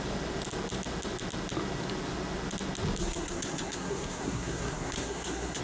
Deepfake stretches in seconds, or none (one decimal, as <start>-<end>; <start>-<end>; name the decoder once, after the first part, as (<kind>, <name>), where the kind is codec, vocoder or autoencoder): 3.0-5.6 (codec, SNAC)